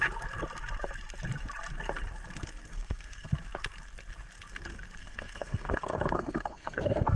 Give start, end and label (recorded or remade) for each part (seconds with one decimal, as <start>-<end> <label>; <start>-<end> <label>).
0.0-2.7 recorded; 2.7-3.3 remade; 3.3-5.0 recorded; 5.0-7.2 remade